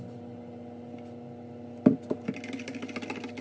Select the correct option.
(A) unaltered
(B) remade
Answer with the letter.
A